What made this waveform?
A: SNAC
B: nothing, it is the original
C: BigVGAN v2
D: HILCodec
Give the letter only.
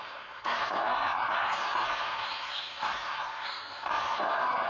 A